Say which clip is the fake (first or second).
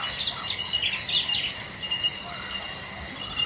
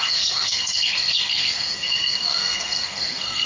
second